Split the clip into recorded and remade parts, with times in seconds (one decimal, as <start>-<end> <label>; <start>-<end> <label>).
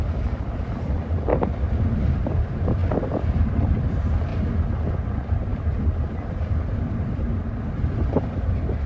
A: 0.0-1.3 remade; 1.3-2.2 recorded; 2.2-2.8 remade; 2.8-3.4 recorded; 3.4-4.3 remade; 4.3-5.1 recorded; 5.1-8.9 remade